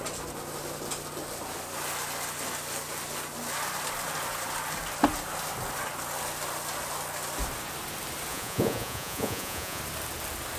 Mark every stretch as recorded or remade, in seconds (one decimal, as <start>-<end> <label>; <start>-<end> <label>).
0.0-8.3 recorded; 8.3-9.8 remade; 9.8-10.6 recorded